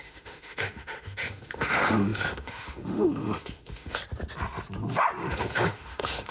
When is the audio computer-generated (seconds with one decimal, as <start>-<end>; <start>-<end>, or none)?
0.0-4.0; 5.2-6.3